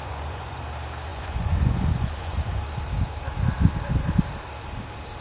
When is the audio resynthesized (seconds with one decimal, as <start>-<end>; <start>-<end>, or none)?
0.0-0.6; 1.1-2.6